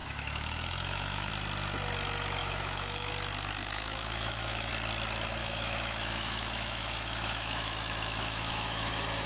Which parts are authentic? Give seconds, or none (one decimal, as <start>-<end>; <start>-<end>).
1.3-2.4; 3.1-3.6; 4.7-5.4